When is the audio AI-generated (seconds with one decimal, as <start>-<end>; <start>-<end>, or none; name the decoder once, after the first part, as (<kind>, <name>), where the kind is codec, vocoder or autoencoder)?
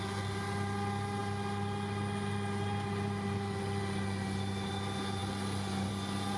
none